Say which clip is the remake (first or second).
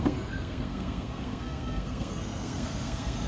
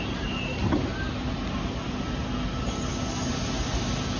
first